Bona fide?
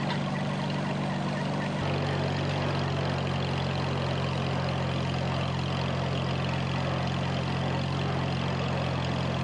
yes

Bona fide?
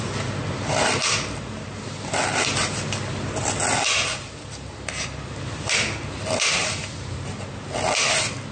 yes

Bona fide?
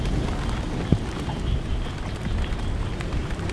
yes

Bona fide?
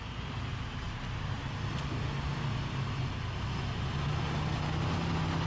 yes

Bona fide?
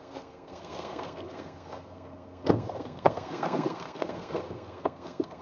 no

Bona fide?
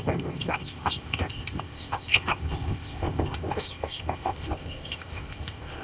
no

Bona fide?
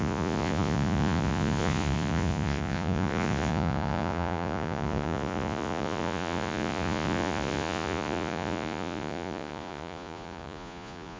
no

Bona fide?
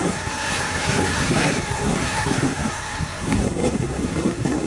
no